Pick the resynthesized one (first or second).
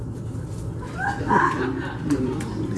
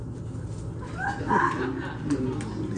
first